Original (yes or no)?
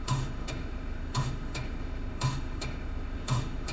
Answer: no